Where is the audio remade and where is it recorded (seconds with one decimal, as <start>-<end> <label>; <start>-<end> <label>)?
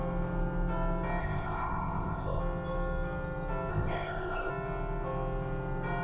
0.0-1.2 recorded; 1.2-2.4 remade; 2.4-3.7 recorded; 3.7-4.5 remade; 4.5-6.0 recorded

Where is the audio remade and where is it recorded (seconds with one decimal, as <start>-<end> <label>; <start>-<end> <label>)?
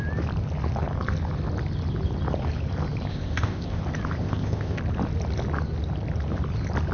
0.0-3.1 recorded; 3.1-3.8 remade; 3.8-4.2 recorded; 4.2-4.8 remade; 4.8-6.9 recorded